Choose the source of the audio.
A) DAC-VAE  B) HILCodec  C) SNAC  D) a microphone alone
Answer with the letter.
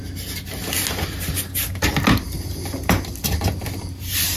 D